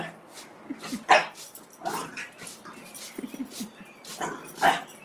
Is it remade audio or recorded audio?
recorded